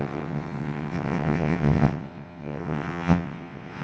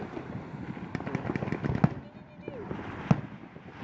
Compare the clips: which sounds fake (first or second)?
first